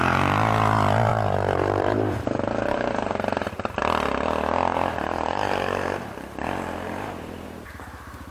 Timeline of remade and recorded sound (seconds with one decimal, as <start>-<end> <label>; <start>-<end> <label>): 0.0-1.1 recorded; 1.1-3.8 remade; 3.8-4.7 recorded; 4.7-7.7 remade; 7.7-8.3 recorded